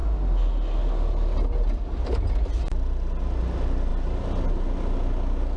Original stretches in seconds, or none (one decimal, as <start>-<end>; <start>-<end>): 0.0-5.6